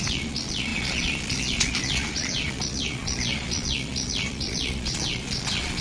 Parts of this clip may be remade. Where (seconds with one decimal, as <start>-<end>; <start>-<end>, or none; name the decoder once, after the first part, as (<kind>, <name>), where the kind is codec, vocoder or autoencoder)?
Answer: 0.0-5.8 (vocoder, Vocos)